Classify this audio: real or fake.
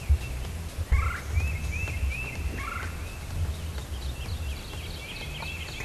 real